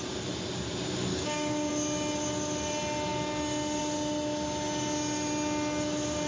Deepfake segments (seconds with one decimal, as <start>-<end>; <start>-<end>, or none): 1.1-1.7